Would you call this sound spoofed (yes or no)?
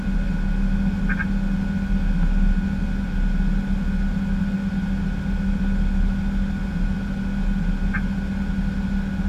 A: no